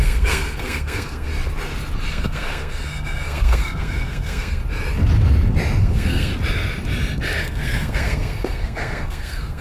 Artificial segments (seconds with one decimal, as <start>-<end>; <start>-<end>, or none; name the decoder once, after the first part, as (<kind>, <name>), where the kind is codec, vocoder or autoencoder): 0.0-1.3 (codec, SNAC); 2.1-4.6; 5.8-6.3; 7.4-9.6